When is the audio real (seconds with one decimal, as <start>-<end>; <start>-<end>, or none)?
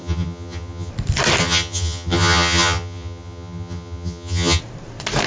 0.9-1.4; 4.6-5.3